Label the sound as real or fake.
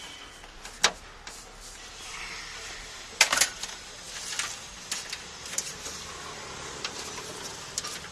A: real